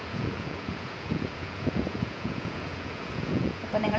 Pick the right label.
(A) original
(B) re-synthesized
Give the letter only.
B